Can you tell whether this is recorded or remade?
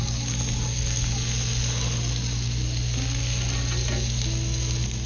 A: recorded